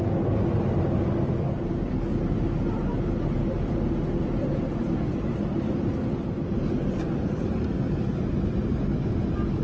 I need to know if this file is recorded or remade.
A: recorded